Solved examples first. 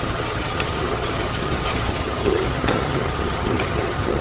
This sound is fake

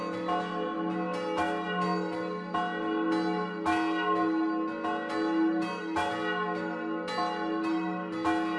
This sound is real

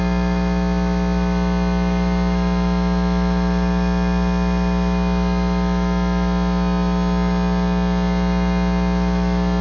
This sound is fake